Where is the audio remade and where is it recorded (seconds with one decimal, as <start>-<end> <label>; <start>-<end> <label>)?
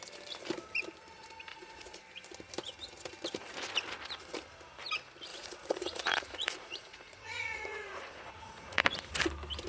0.0-1.5 recorded; 1.5-2.0 remade; 2.0-5.3 recorded; 5.3-9.1 remade; 9.1-9.7 recorded